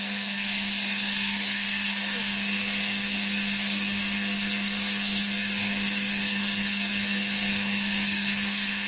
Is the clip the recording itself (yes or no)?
no